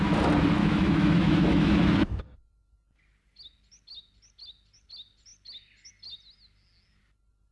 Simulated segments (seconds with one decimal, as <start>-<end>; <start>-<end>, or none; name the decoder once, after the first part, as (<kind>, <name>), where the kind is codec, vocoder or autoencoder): 0.6-2.2 (autoencoder, DAC-VAE)